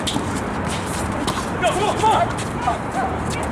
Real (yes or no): no